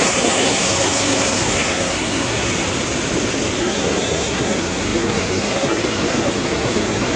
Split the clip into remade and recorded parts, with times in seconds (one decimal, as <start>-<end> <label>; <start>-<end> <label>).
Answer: 0.0-2.5 remade; 2.5-3.6 recorded; 3.6-7.2 remade